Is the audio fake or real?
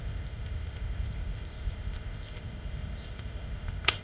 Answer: fake